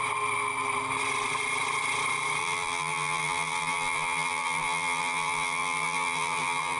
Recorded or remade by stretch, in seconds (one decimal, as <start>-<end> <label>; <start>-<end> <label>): 0.0-2.4 recorded; 2.4-6.8 remade